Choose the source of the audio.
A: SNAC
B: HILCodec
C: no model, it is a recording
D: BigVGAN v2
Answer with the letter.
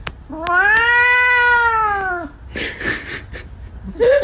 C